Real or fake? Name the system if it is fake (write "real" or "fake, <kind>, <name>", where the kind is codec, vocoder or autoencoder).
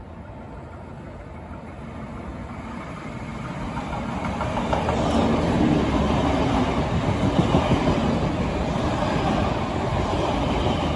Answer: real